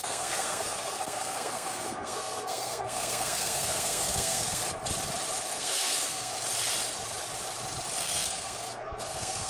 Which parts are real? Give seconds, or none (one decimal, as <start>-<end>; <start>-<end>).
4.6-5.5; 6.3-8.0